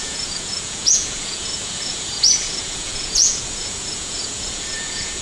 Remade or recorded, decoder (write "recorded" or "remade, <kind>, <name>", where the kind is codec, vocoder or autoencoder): remade, vocoder, Vocos